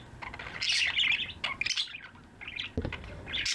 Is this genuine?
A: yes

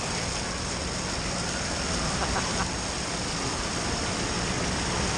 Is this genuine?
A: no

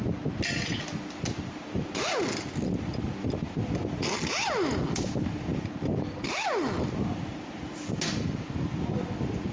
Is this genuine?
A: yes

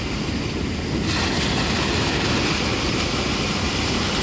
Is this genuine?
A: yes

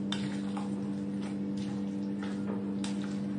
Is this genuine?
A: yes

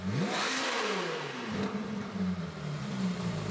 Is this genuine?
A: no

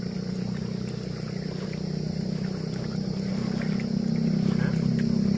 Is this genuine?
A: yes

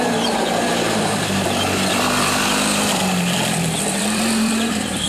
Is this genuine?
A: no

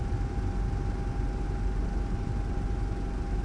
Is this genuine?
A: yes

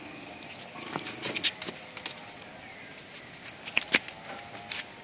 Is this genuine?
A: yes